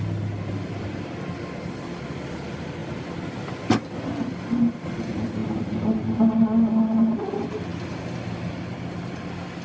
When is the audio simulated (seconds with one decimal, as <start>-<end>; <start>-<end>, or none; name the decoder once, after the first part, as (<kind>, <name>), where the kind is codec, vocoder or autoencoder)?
none